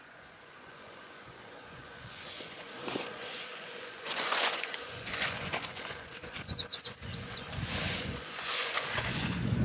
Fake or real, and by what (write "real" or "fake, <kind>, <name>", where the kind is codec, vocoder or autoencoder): fake, vocoder, Vocos